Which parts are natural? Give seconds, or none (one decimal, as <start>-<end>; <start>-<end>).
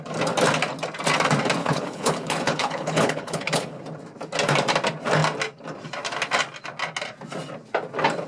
0.0-1.6; 3.8-8.3